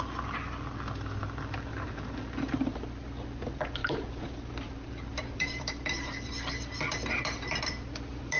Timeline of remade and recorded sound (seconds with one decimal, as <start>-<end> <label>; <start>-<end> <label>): 0.0-1.7 recorded; 1.7-2.8 remade; 2.8-3.8 recorded; 3.8-6.3 remade; 6.3-8.4 recorded